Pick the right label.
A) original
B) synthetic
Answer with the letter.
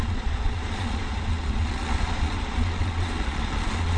B